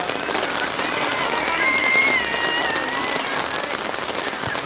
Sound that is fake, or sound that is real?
real